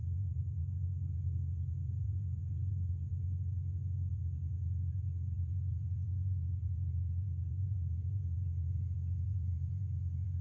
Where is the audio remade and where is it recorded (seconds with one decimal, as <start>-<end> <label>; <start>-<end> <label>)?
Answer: 0.0-0.6 remade; 0.6-1.1 recorded; 1.1-3.1 remade; 3.1-4.1 recorded; 4.1-10.4 remade